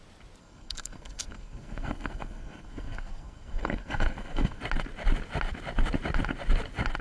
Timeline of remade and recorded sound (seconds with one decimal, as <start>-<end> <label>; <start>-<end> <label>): 0.0-0.4 recorded; 0.4-4.6 remade; 4.6-7.0 recorded